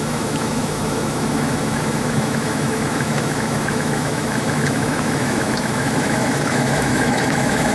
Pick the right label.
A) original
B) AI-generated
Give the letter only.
B